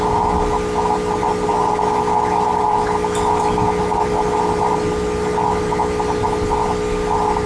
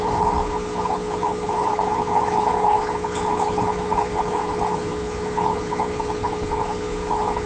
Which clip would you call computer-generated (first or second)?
second